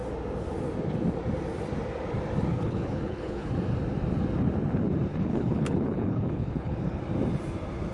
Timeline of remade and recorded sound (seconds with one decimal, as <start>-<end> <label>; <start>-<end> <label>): 0.0-2.5 recorded; 2.5-3.5 remade; 3.5-5.1 recorded; 5.1-7.0 remade; 7.0-7.9 recorded